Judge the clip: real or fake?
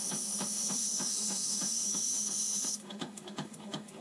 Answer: fake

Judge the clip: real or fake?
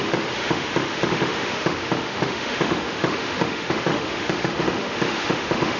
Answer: fake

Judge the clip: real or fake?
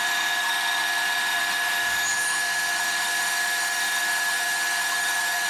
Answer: fake